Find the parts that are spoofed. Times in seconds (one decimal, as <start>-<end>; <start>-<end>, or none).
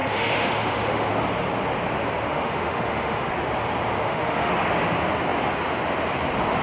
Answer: 0.0-1.1; 2.3-3.3; 4.0-4.5